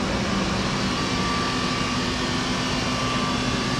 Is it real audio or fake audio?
real